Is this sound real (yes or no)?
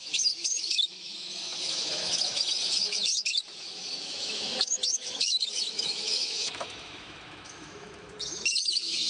no